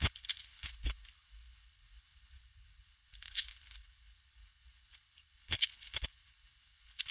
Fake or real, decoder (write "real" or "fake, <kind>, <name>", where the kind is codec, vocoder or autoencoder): fake, codec, HILCodec